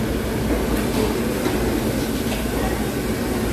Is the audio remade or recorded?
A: recorded